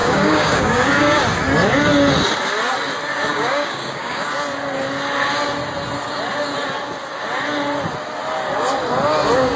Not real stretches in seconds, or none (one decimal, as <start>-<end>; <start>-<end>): 0.0-1.2; 3.3-4.3